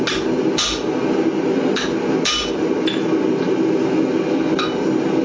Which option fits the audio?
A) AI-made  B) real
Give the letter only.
B